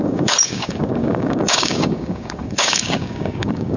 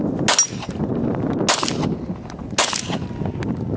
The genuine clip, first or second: second